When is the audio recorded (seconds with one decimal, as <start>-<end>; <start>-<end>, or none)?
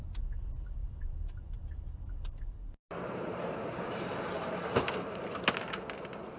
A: 0.0-6.4